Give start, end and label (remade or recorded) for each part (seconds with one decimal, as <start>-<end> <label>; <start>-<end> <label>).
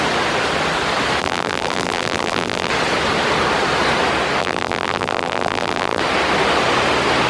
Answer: 0.0-1.2 recorded; 1.2-2.7 remade; 2.7-4.4 recorded; 4.4-6.0 remade; 6.0-7.3 recorded